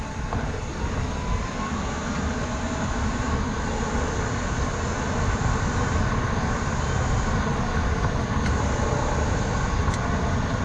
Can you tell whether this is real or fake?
real